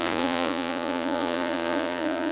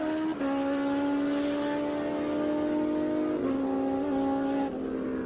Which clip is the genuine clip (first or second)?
second